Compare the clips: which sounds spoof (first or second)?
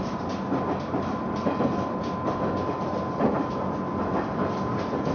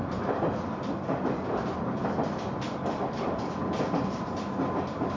second